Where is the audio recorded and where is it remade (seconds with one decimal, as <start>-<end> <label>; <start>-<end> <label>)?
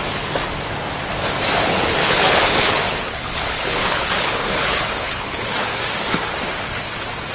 0.0-1.6 recorded; 1.6-5.8 remade; 5.8-7.3 recorded